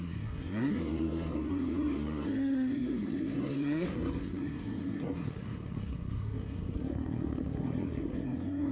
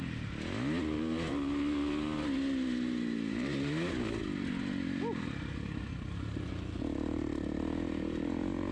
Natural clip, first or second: second